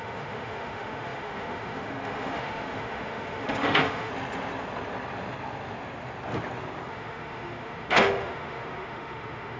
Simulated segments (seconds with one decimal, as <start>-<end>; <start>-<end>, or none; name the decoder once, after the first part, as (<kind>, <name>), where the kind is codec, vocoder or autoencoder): 0.0-4.1 (autoencoder, DAC-VAE); 6.9-9.6